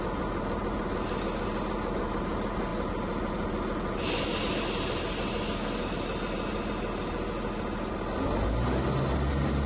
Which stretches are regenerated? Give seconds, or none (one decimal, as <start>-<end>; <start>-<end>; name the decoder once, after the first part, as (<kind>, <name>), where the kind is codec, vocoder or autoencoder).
none